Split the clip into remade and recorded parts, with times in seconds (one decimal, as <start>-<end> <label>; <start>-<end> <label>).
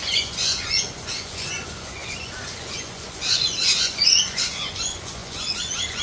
0.0-6.0 remade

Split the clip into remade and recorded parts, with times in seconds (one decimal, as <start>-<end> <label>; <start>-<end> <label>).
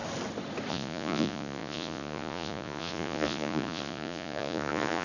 0.0-0.7 recorded; 0.7-5.0 remade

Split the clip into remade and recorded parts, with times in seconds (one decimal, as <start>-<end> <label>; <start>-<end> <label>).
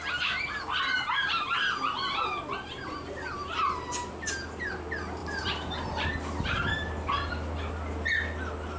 0.0-8.8 recorded